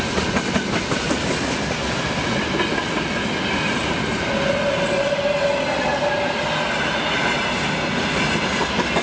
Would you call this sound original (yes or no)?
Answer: yes